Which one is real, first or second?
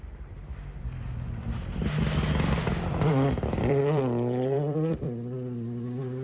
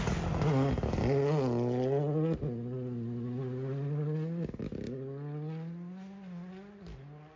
second